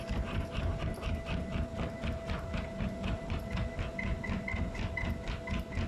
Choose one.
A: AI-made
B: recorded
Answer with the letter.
B